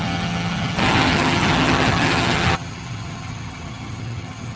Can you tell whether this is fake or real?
fake